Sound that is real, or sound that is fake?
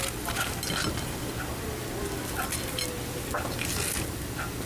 real